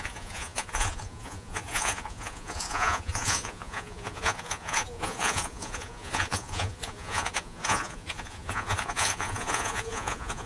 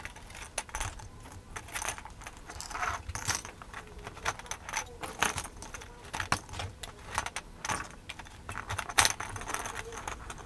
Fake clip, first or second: first